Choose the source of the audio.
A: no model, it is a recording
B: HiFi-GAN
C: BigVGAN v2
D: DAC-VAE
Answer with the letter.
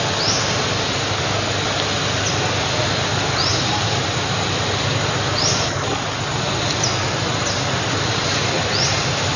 A